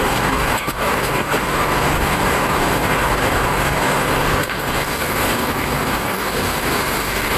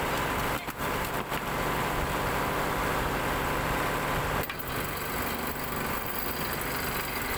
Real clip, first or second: second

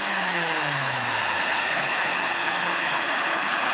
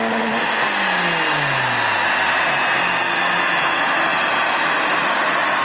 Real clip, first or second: second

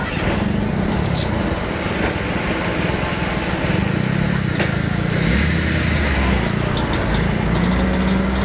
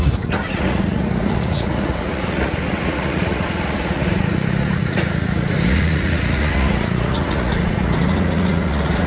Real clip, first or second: first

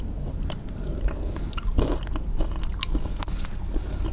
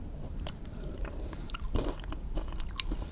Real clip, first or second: first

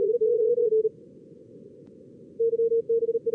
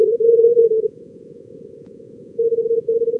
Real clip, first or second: first